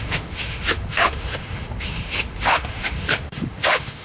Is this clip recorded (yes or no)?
no